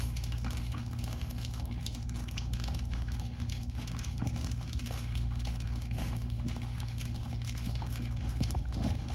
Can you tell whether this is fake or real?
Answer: fake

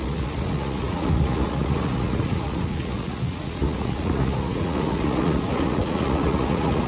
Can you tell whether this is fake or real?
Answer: fake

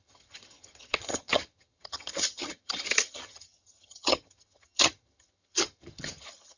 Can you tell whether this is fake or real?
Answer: fake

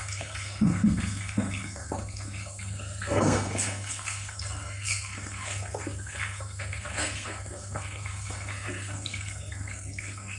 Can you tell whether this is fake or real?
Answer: fake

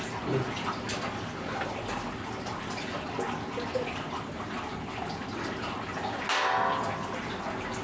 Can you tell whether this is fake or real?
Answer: real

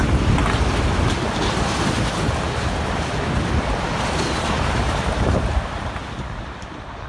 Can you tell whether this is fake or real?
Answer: real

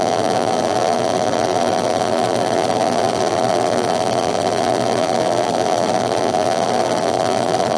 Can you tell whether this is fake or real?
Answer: fake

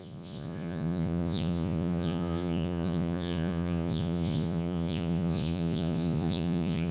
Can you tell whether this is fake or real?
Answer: fake